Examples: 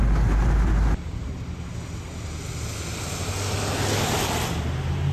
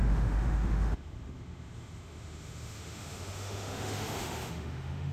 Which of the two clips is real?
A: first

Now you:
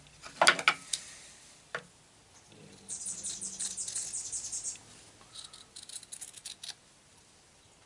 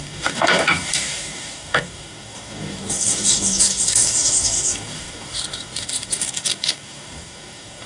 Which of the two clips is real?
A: first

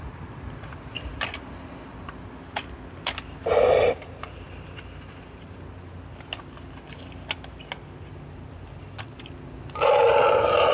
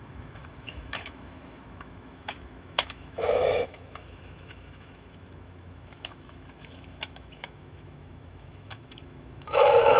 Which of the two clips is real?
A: first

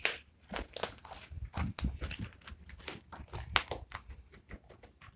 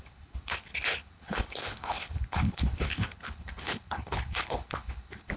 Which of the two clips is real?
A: first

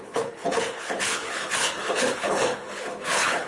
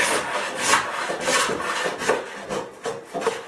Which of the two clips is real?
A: second